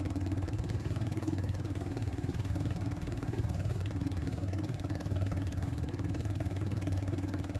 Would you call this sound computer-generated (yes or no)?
yes